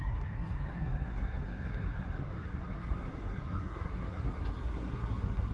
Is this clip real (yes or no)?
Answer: no